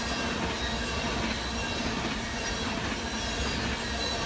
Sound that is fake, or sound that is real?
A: real